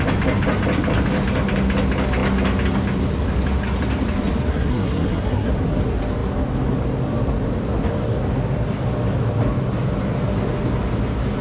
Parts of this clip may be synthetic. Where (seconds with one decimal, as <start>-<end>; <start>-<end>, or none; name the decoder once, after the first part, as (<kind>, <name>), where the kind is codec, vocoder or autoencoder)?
4.5-5.5 (codec, SNAC)